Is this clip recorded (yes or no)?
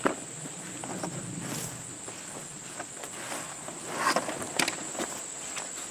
yes